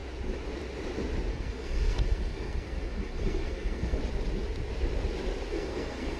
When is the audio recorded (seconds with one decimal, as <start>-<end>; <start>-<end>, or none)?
0.0-1.3; 4.0-5.5